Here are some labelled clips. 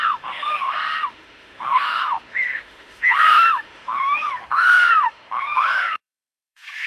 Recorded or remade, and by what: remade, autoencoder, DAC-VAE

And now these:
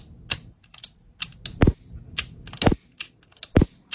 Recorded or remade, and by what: recorded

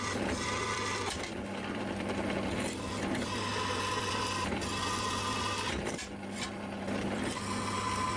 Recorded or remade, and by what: recorded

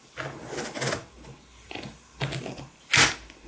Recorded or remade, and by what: recorded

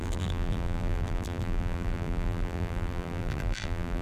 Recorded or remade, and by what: remade, vocoder, BigVGAN v2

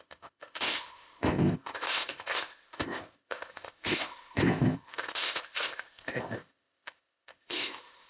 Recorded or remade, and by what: remade, codec, ZipCodec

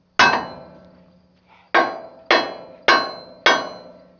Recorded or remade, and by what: recorded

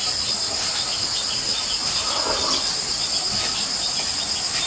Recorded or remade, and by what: recorded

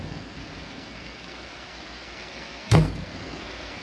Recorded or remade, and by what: remade, codec, SNAC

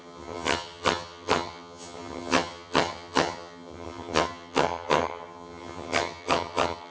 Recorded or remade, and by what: remade, vocoder, HiFi-GAN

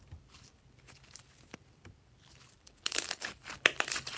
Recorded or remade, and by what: remade, vocoder, BigVGAN v2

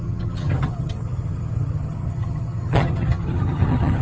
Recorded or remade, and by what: remade, vocoder, HiFi-GAN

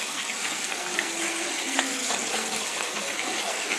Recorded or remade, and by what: remade, codec, SNAC